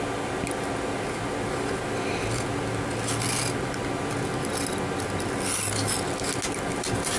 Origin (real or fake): real